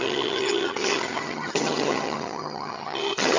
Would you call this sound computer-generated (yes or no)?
yes